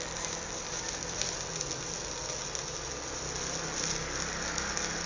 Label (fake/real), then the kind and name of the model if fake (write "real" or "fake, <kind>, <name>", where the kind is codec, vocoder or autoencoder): real